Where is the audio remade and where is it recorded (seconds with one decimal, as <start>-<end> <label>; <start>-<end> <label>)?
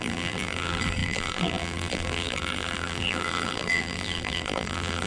0.0-5.1 remade